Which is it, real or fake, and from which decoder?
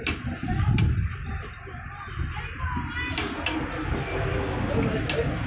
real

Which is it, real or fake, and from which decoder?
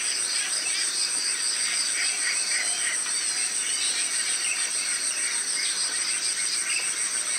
real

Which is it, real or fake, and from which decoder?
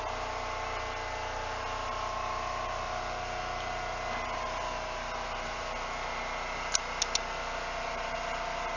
real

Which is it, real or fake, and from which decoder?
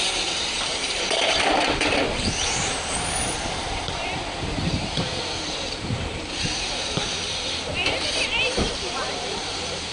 fake, vocoder, BigVGAN v2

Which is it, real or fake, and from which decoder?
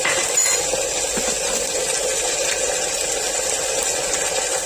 real